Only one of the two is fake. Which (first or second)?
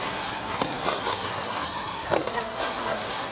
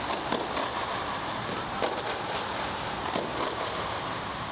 first